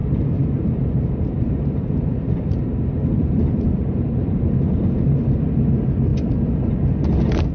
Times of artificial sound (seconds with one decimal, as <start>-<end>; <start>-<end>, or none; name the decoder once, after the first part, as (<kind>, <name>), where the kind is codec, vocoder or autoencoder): 0.0-4.5 (vocoder, BigVGAN v2)